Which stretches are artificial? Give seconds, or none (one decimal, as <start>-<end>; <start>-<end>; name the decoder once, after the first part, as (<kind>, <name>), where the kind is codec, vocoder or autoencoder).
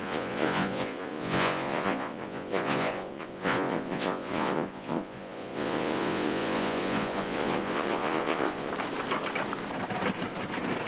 0.0-8.7 (vocoder, Vocos)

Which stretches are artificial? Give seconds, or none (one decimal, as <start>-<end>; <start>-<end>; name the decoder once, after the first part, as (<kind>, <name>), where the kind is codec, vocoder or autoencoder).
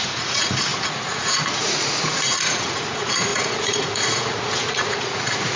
0.0-5.6 (vocoder, Vocos)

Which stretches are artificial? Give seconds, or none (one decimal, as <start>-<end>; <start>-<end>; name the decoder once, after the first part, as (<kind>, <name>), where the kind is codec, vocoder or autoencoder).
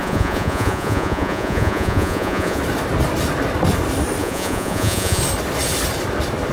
0.0-2.6 (vocoder, Vocos); 4.2-5.2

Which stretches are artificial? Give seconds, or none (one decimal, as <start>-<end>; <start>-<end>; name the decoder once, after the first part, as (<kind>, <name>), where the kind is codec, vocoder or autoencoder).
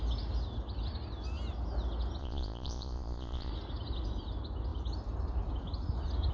2.2-3.5 (vocoder, Vocos)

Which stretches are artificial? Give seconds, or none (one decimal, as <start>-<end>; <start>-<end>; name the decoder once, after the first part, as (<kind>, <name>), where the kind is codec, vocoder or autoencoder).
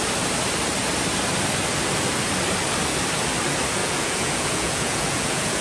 3.8-5.6 (vocoder, Vocos)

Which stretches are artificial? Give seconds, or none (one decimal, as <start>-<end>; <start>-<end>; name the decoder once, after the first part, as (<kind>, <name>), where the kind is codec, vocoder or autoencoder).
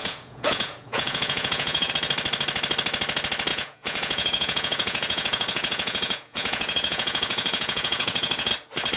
0.0-1.9 (vocoder, Vocos); 3.5-8.5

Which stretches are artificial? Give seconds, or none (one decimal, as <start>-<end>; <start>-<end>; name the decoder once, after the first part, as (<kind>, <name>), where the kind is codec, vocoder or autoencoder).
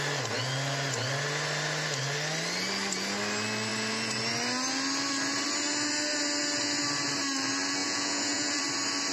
7.8-8.6 (vocoder, Vocos)